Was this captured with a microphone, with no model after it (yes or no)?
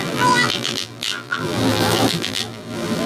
no